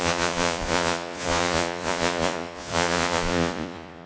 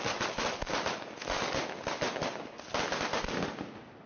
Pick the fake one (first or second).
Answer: first